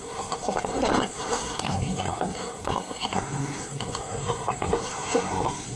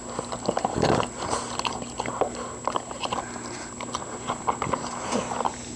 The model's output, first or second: first